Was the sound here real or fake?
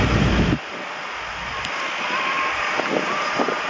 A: real